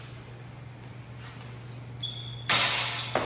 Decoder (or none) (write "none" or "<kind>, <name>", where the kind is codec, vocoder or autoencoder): none